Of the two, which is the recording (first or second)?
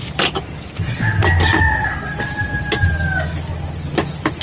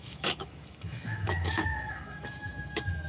first